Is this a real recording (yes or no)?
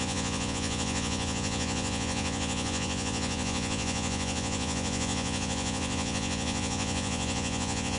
no